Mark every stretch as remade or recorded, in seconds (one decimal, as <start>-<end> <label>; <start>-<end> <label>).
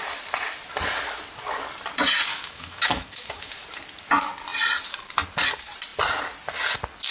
0.0-2.3 recorded; 2.3-3.5 remade; 3.5-7.1 recorded